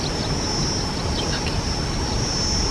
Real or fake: real